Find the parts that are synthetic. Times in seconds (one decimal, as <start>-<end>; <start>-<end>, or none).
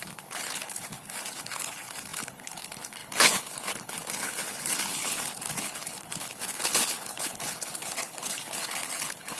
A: 0.0-9.4